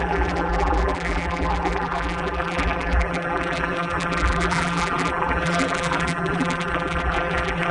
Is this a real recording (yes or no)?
no